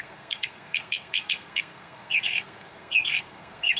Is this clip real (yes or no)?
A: no